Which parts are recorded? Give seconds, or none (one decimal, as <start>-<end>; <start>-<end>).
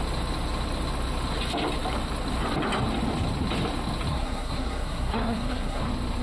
0.0-4.1; 5.8-6.2